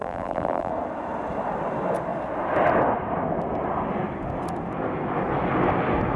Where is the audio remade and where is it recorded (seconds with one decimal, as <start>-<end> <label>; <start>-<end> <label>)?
0.0-0.7 remade; 0.7-6.2 recorded

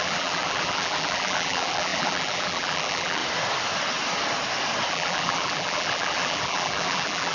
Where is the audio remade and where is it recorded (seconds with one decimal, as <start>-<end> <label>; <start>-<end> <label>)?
0.0-3.2 remade; 3.2-4.9 recorded; 4.9-7.3 remade

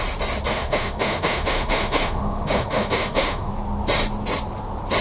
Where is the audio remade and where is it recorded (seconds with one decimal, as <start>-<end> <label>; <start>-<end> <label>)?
0.0-0.5 recorded; 0.5-3.5 remade; 3.5-5.0 recorded

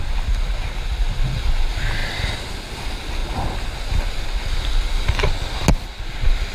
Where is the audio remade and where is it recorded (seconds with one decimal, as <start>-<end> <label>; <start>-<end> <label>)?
0.0-6.5 recorded

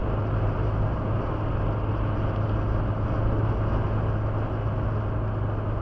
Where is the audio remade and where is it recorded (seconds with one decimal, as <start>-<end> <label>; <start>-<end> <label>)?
0.0-5.8 recorded

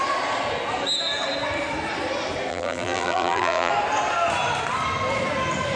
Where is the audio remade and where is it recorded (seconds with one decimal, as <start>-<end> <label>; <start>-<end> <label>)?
0.0-2.5 recorded; 2.5-3.7 remade; 3.7-5.8 recorded

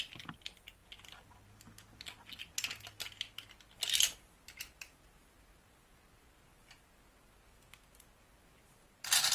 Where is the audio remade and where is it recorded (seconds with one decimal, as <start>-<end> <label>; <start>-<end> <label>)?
0.0-9.3 recorded

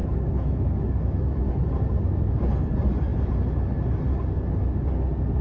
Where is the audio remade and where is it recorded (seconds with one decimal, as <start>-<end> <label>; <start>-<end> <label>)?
0.0-1.5 remade; 1.5-5.4 recorded